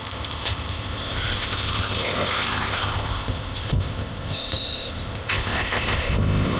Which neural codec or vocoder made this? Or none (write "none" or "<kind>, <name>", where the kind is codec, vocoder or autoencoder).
codec, ZipCodec